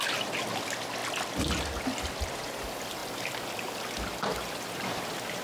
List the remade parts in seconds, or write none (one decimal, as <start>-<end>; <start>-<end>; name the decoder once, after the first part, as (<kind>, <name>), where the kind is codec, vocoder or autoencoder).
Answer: none